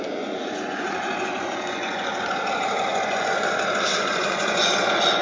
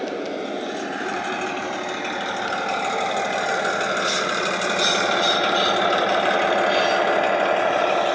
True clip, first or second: second